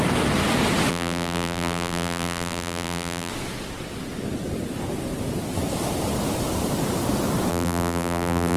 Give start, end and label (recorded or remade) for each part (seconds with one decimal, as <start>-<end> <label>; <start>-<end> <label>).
0.0-0.9 recorded; 0.9-3.3 remade; 3.3-7.5 recorded; 7.5-8.6 remade